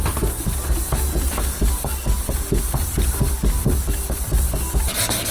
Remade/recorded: recorded